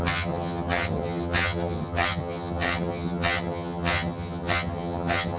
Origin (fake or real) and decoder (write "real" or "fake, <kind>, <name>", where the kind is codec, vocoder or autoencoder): fake, vocoder, HiFi-GAN